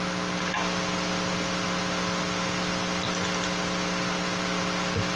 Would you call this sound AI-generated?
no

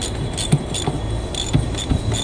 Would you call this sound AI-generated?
no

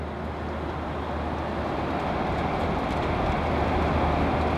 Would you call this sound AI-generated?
no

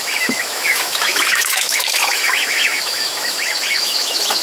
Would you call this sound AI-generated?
yes